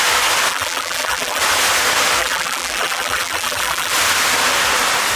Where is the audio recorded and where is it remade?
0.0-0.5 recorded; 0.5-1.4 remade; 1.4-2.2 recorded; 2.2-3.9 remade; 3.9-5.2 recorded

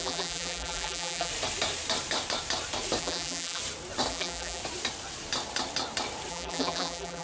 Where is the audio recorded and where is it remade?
0.0-1.3 remade; 1.3-3.0 recorded; 3.0-3.6 remade; 3.6-4.1 recorded; 4.1-4.6 remade; 4.6-6.3 recorded; 6.3-7.2 remade